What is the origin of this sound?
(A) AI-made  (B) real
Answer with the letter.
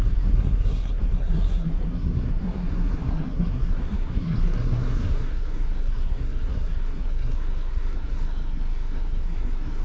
A